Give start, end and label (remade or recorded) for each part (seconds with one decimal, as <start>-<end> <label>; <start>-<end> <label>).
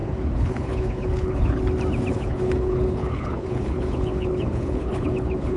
0.0-1.6 remade; 1.6-2.1 recorded; 2.1-5.6 remade